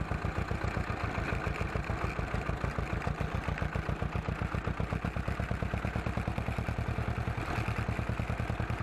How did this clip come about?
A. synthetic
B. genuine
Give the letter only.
B